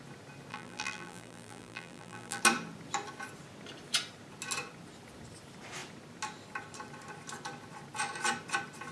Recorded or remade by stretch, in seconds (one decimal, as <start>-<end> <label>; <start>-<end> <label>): 0.0-0.5 recorded; 0.5-2.4 remade; 2.4-8.9 recorded